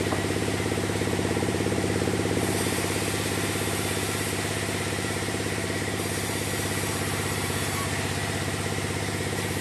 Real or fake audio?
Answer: fake